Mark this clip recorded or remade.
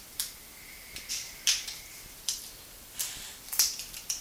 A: remade